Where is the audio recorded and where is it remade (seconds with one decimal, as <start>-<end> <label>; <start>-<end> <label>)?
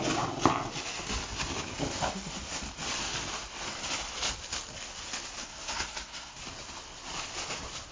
0.0-5.4 recorded; 5.4-6.4 remade; 6.4-7.9 recorded